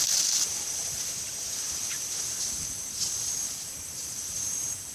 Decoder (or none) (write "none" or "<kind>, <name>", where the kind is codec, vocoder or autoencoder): vocoder, BigVGAN v2